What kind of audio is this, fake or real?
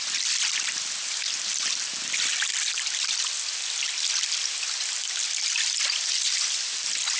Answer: real